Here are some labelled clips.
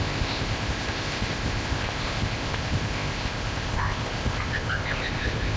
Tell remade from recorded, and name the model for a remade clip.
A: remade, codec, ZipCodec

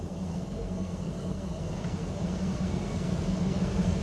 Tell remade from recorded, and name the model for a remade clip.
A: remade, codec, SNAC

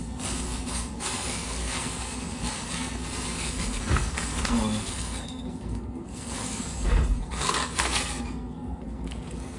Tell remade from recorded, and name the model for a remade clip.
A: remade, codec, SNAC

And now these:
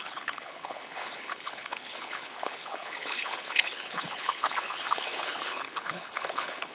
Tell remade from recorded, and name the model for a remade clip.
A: remade, codec, HILCodec